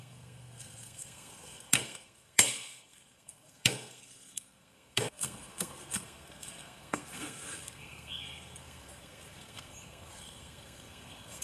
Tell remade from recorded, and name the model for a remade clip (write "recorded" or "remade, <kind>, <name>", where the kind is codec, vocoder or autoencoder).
remade, codec, SNAC